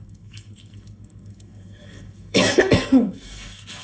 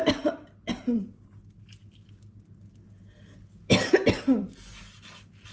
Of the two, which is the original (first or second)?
second